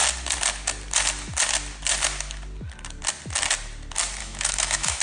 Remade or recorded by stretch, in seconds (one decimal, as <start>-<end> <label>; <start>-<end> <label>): 0.0-4.2 recorded; 4.2-5.0 remade